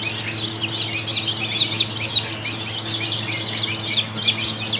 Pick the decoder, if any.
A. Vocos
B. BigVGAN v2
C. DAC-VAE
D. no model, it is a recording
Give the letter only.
D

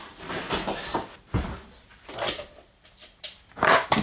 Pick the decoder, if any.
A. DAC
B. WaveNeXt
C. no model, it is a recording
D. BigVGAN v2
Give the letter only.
C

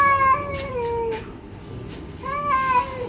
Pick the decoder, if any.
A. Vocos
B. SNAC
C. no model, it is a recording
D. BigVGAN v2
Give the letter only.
C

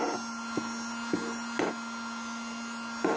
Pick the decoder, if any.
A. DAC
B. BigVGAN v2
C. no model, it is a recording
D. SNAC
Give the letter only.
C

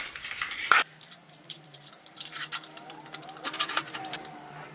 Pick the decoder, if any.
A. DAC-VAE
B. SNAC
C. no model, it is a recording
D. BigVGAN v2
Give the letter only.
D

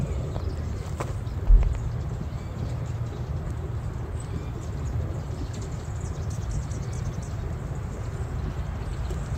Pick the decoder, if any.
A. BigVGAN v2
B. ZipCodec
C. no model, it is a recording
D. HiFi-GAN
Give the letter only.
C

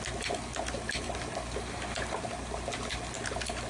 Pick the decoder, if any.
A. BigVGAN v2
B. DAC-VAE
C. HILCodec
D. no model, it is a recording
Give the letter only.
D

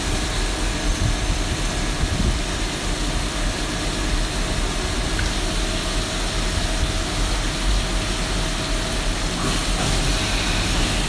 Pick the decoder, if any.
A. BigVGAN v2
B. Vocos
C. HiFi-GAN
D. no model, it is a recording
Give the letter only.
D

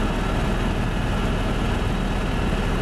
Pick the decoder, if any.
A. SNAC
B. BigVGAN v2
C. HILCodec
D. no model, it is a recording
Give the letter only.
D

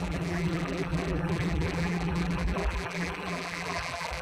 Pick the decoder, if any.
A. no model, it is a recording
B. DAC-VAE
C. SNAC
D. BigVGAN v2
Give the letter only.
D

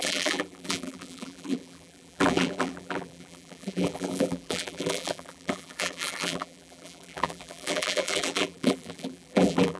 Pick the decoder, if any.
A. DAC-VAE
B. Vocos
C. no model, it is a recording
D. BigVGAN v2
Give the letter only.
D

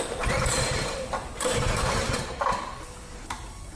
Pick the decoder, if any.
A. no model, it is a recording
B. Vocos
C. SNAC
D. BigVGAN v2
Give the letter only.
D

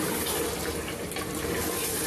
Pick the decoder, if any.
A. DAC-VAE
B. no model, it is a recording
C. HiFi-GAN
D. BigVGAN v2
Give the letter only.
B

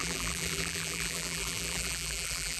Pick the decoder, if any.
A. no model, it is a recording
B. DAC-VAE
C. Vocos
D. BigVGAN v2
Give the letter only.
D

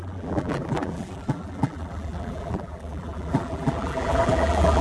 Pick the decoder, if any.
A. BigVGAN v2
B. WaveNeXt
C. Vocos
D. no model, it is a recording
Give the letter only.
A